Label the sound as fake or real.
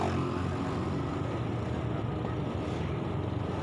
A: real